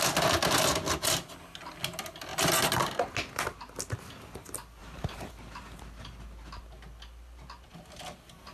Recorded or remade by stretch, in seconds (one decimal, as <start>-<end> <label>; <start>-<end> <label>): 0.0-4.8 recorded; 4.8-5.3 remade; 5.3-8.5 recorded